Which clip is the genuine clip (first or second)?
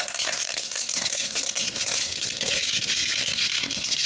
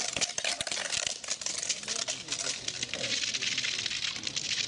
second